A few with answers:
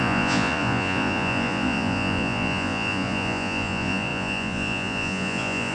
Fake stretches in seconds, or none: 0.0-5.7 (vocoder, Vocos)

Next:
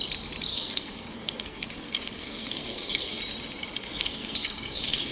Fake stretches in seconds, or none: 0.5-3.2 (codec, SNAC); 3.8-5.1